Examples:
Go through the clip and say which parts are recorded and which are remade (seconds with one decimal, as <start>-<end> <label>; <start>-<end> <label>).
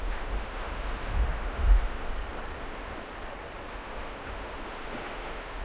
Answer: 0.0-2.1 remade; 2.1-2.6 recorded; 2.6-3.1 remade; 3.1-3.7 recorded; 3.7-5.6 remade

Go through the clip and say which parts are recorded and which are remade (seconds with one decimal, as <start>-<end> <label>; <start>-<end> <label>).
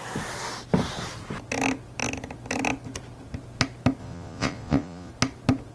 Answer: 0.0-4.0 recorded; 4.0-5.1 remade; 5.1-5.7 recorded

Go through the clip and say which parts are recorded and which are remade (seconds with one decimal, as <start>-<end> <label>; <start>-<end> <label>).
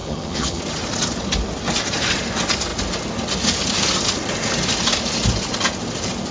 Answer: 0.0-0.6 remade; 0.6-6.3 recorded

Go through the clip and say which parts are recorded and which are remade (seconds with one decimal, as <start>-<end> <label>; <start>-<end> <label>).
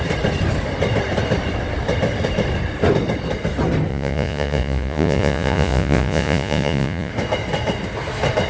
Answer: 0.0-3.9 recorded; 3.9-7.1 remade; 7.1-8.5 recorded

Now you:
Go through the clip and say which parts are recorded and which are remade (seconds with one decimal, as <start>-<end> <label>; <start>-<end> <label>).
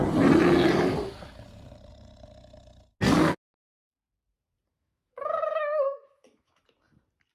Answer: 0.0-4.7 recorded; 4.7-6.6 remade; 6.6-7.3 recorded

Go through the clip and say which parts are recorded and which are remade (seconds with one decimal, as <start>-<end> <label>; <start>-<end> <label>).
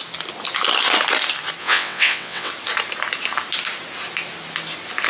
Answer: 0.0-1.6 recorded; 1.6-2.5 remade; 2.5-5.1 recorded